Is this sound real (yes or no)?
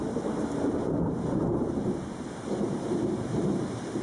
no